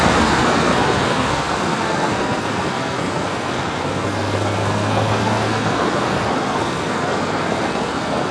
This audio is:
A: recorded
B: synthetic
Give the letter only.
B